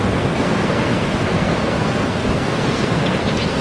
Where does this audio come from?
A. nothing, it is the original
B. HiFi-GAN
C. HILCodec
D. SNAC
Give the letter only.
D